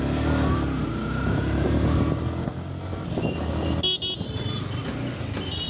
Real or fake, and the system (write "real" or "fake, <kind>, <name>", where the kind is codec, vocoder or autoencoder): real